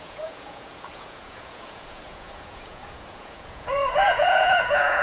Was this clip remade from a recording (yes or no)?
yes